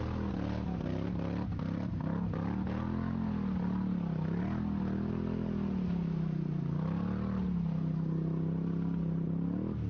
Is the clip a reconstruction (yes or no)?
no